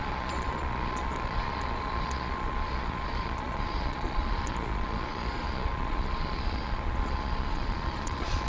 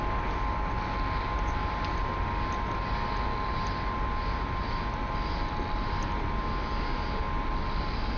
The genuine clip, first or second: second